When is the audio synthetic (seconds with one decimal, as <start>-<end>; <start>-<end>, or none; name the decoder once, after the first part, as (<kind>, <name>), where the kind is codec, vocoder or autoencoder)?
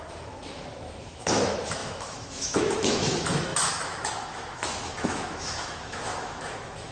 0.0-6.9 (autoencoder, DAC-VAE)